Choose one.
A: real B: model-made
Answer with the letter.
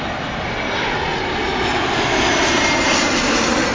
A